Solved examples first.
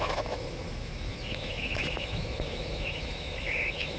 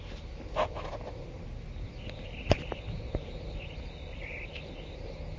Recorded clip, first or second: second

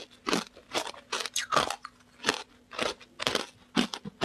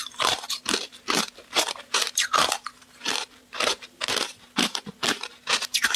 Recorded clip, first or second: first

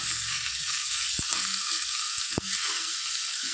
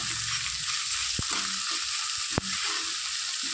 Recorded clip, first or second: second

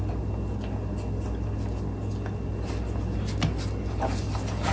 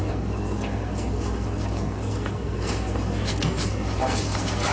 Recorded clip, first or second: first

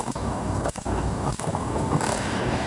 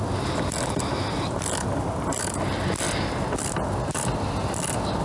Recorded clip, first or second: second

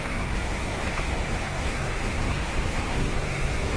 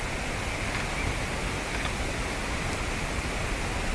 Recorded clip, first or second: second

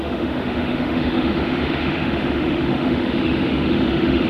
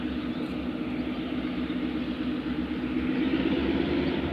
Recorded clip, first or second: second